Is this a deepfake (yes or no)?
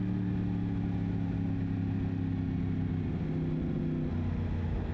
no